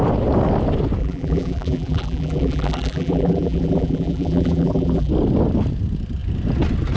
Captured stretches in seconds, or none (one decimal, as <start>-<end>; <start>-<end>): 0.0-1.0; 5.1-7.0